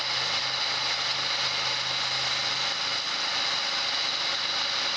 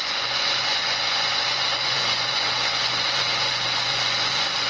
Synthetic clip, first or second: second